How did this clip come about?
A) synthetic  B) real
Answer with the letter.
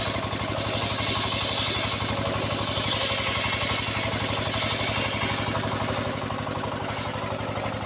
B